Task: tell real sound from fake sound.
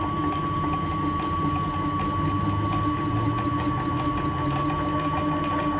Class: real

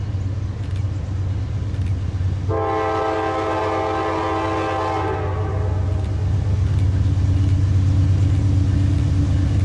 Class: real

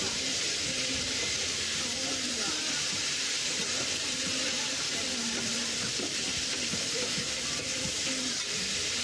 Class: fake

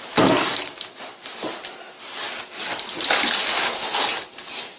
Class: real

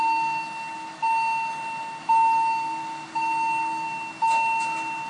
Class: real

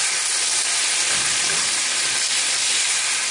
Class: real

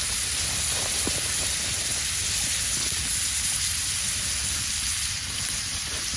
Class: real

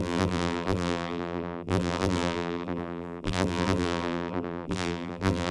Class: fake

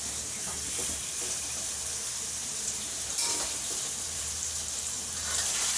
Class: fake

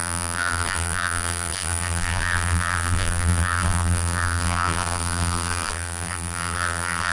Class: fake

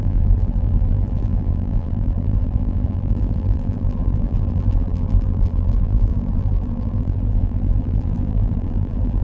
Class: fake